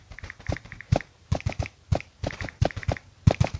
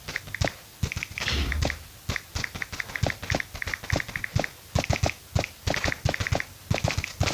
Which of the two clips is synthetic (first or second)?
first